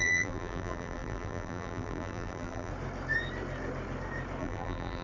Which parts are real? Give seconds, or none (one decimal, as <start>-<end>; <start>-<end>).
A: 2.7-4.4